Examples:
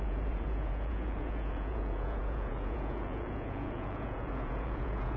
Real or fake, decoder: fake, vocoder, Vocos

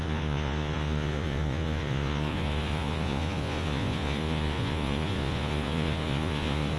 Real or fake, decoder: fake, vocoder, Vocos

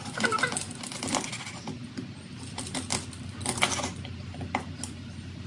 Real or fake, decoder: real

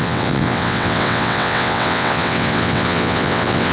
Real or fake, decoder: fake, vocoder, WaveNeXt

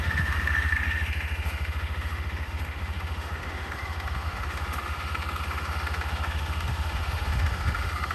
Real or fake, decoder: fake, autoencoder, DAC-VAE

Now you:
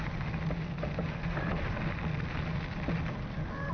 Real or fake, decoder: real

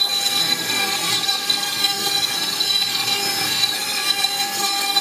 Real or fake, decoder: fake, codec, SNAC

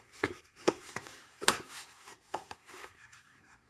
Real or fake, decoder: fake, codec, SNAC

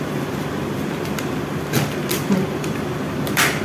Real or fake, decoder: real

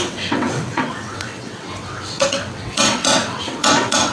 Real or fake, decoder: fake, vocoder, WaveNeXt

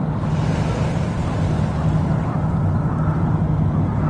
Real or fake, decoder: real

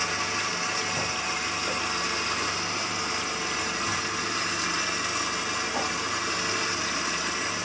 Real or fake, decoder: real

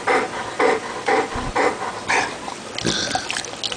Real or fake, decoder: real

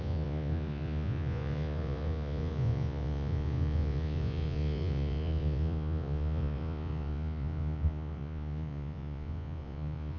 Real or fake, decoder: fake, vocoder, Vocos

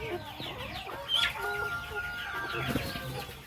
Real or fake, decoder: real